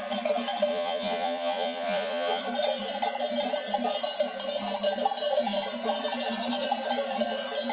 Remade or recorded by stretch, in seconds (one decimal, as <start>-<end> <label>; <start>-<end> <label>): 0.0-0.7 recorded; 0.7-2.4 remade; 2.4-7.7 recorded

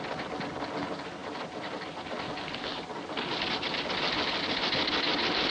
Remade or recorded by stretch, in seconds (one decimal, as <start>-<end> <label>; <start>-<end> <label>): 0.0-5.5 recorded